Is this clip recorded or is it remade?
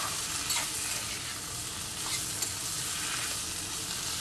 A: recorded